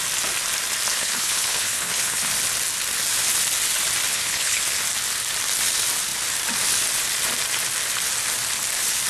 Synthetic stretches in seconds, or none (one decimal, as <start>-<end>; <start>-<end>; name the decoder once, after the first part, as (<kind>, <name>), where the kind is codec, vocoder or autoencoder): 0.9-2.3 (codec, HILCodec); 4.1-4.6